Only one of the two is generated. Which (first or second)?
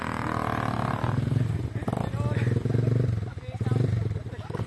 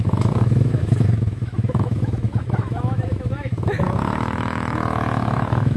second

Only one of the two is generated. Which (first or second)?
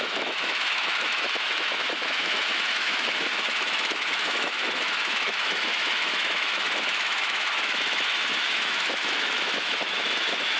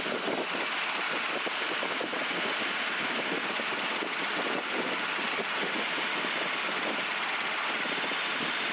first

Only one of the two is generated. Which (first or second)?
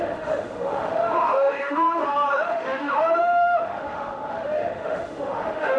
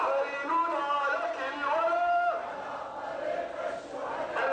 first